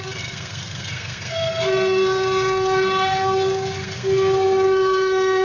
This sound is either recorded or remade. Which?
remade